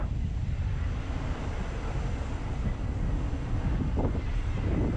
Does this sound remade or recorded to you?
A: recorded